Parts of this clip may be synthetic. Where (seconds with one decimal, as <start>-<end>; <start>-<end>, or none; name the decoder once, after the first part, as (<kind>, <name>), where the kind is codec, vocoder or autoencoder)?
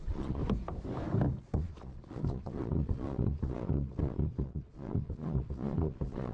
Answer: 0.0-0.4 (vocoder, Vocos); 1.4-6.3